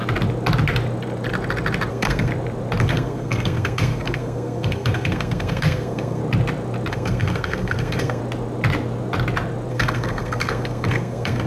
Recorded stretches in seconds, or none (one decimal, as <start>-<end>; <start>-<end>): 0.0-1.9; 2.3-2.8; 6.2-6.9; 8.2-9.7